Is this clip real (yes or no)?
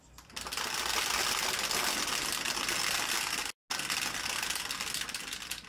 yes